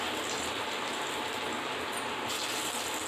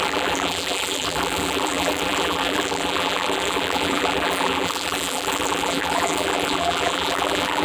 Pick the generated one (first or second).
second